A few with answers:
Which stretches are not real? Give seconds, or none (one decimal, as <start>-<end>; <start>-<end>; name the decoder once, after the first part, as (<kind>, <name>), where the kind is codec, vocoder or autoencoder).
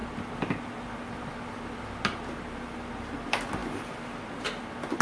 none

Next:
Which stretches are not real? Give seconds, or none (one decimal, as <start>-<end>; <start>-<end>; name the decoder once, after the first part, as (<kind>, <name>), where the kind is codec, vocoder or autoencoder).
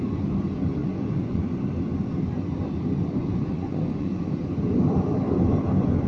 0.8-1.4 (vocoder, Vocos); 3.2-4.3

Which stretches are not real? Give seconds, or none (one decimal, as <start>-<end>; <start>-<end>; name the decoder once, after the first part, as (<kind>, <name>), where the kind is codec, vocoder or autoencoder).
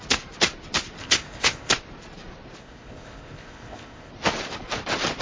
1.0-1.7 (codec, ZipCodec); 2.6-4.1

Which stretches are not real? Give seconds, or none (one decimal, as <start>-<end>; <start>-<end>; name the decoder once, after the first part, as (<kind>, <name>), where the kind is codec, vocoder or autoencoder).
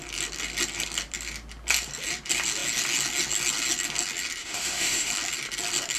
4.4-5.1 (autoencoder, DAC-VAE)